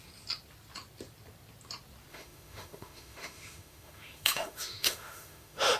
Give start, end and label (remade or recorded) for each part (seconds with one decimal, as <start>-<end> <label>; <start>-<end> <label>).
0.0-2.1 recorded; 2.1-5.8 remade